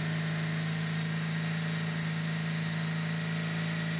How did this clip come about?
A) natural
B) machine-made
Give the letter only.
A